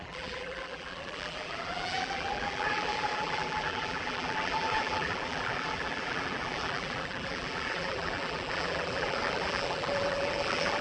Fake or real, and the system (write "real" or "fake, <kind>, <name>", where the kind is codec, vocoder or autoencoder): fake, vocoder, BigVGAN v2